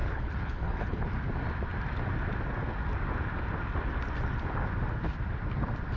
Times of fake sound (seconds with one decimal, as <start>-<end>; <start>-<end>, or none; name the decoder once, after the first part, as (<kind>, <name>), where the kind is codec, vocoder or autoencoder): 0.0-1.0 (codec, HILCodec)